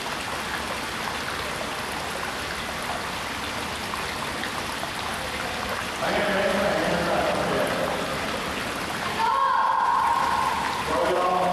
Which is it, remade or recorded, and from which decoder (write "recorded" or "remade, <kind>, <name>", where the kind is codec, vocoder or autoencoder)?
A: recorded